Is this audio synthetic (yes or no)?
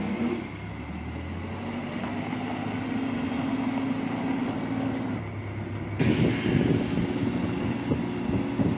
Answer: no